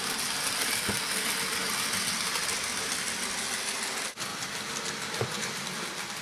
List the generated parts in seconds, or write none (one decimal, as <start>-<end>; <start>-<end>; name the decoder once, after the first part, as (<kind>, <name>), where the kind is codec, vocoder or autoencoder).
none